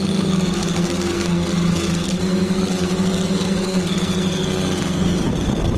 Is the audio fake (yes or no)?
yes